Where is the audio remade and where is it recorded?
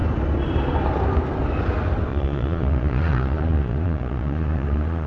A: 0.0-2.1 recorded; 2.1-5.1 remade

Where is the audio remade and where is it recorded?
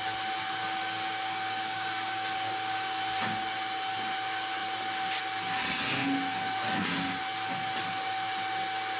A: 0.0-0.6 recorded; 0.6-3.0 remade; 3.0-9.0 recorded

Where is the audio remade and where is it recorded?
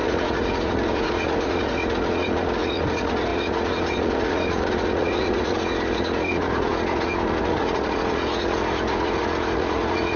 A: 0.0-10.2 remade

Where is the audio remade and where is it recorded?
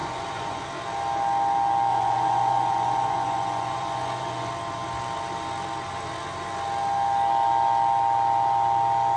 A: 0.0-0.6 remade; 0.6-1.9 recorded; 1.9-4.5 remade; 4.5-9.2 recorded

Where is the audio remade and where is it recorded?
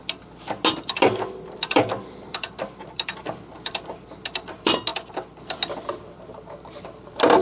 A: 0.0-7.4 recorded